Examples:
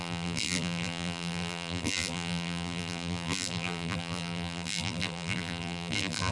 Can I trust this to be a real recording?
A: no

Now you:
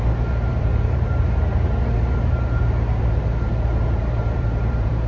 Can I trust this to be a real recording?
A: no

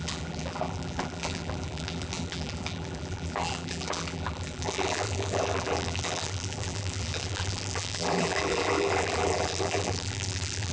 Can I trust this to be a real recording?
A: no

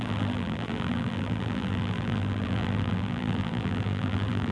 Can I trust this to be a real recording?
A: no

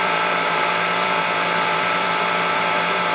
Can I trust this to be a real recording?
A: no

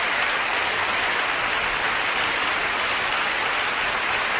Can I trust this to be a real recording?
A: yes